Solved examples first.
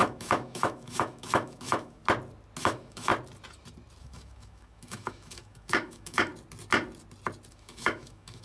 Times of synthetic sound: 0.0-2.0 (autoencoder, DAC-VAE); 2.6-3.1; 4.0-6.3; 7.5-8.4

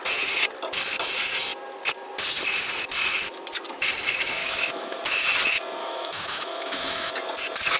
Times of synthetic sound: 4.4-5.0 (autoencoder, DAC-VAE); 5.8-7.1

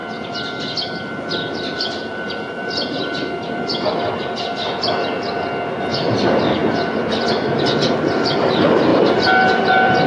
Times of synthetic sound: 1.5-3.7 (vocoder, BigVGAN v2); 6.0-10.1

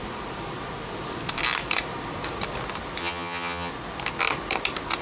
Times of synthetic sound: 3.0-3.7 (vocoder, HiFi-GAN)